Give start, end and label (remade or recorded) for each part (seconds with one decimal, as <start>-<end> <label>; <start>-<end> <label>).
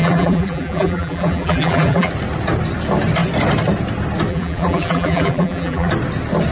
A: 0.0-2.1 remade; 2.1-4.3 recorded; 4.3-5.9 remade; 5.9-6.5 recorded